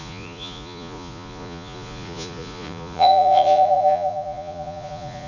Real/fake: fake